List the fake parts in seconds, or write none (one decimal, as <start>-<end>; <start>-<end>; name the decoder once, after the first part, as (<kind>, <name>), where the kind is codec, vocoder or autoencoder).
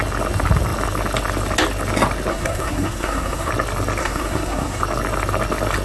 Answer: 2.3-3.5 (codec, SNAC); 4.0-4.8